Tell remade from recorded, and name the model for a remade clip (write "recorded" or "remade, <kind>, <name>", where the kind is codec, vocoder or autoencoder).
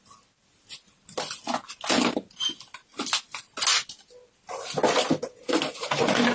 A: recorded